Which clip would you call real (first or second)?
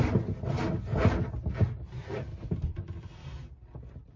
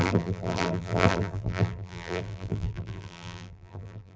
first